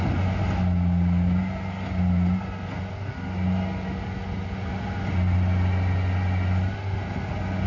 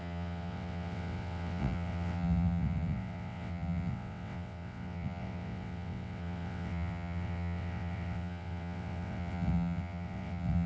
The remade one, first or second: second